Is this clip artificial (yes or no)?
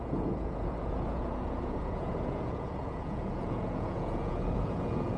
yes